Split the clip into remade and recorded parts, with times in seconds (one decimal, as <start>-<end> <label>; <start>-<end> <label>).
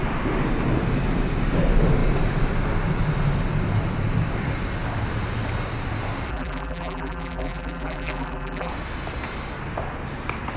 0.0-6.3 recorded; 6.3-8.7 remade; 8.7-10.6 recorded